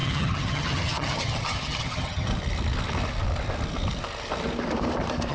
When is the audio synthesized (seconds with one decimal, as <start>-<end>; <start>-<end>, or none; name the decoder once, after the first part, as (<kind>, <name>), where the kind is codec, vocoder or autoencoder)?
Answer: 0.0-2.3 (vocoder, HiFi-GAN)